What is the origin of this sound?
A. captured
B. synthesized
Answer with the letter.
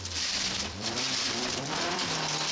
B